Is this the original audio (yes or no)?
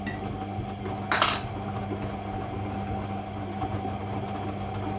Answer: yes